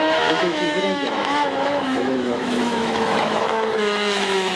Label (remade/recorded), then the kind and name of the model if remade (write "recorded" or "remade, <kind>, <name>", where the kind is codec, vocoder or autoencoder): remade, autoencoder, DAC-VAE